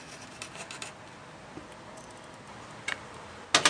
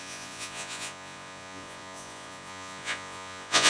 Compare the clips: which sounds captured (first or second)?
first